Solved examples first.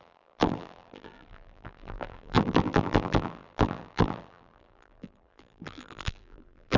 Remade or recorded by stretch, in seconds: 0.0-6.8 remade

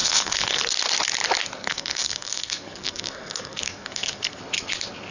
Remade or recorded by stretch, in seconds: 0.0-0.6 remade; 0.6-1.6 recorded; 1.6-4.4 remade; 4.4-5.1 recorded

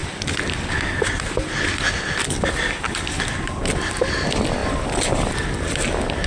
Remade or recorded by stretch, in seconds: 0.0-6.3 recorded

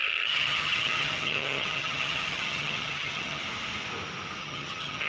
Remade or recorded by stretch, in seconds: 0.0-3.4 remade; 3.4-4.4 recorded; 4.4-5.1 remade

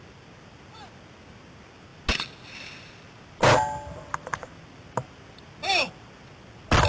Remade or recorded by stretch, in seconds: 0.0-6.9 recorded

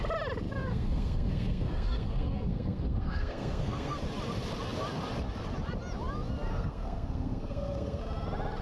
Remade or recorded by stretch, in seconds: 0.0-0.6 recorded; 0.6-4.0 remade; 4.0-6.5 recorded; 6.5-8.0 remade; 8.0-8.6 recorded